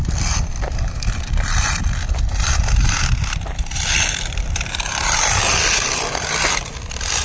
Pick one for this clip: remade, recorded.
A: remade